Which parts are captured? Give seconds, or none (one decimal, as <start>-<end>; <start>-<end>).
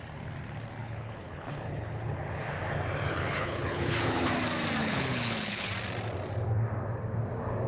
0.0-0.8; 2.2-3.1; 4.3-4.8; 5.7-7.7